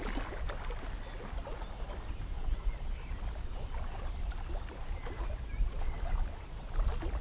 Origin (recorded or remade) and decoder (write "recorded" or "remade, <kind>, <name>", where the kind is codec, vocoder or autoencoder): recorded